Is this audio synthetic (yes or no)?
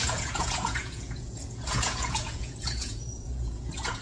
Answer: yes